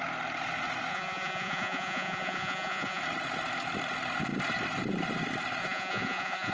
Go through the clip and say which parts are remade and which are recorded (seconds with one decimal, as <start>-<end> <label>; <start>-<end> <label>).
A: 0.0-0.9 recorded; 0.9-3.0 remade; 3.0-5.6 recorded; 5.6-6.5 remade

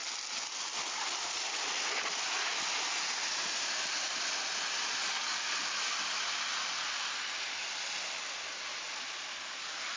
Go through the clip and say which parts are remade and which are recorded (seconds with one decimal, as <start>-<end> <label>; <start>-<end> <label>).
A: 0.0-5.0 recorded; 5.0-5.5 remade; 5.5-10.0 recorded

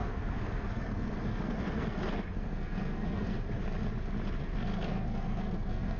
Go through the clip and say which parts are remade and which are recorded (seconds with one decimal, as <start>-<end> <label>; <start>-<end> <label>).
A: 0.0-3.6 remade; 3.6-4.4 recorded; 4.4-6.0 remade

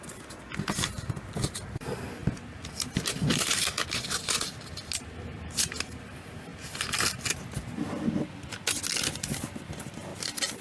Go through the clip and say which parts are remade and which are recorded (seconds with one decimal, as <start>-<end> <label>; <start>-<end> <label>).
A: 0.0-10.1 recorded; 10.1-10.6 remade